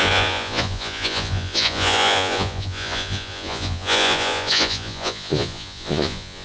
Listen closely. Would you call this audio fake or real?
fake